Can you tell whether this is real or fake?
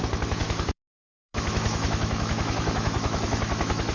fake